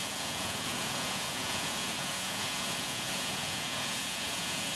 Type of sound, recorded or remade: remade